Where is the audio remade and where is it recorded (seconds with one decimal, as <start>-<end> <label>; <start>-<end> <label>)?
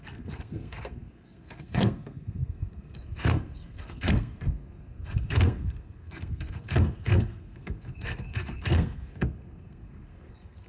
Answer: 0.0-10.7 remade